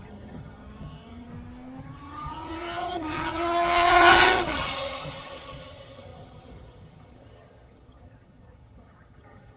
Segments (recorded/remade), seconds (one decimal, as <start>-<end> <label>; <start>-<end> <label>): 0.0-1.3 remade; 1.3-1.8 recorded; 1.8-9.6 remade